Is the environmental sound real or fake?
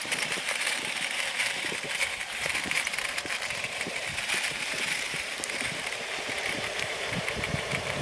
fake